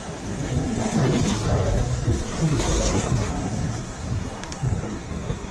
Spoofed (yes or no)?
yes